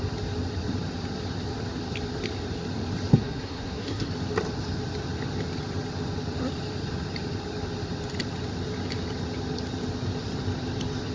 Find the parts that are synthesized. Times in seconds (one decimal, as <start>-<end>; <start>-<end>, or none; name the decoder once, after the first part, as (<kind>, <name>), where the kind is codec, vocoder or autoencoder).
3.1-4.1 (codec, SNAC)